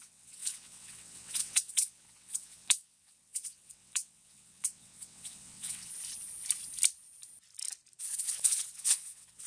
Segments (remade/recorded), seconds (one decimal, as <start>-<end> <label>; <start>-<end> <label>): 0.0-5.9 remade; 5.9-8.0 recorded; 8.0-9.5 remade